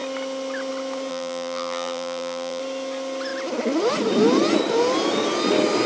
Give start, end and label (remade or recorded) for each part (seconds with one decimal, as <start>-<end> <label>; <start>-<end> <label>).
0.0-1.1 recorded; 1.1-2.6 remade; 2.6-5.9 recorded